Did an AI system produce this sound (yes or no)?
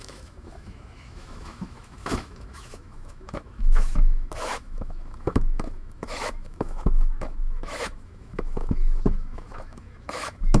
yes